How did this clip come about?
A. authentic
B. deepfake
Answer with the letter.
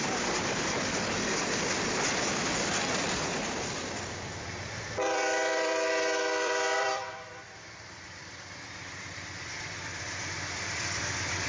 B